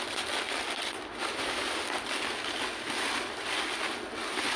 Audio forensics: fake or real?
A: real